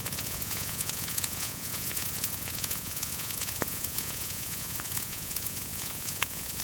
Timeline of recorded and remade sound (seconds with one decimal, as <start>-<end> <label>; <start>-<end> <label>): 0.0-6.6 remade